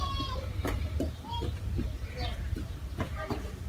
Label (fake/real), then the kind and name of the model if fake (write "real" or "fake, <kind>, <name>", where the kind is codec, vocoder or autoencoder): fake, vocoder, BigVGAN v2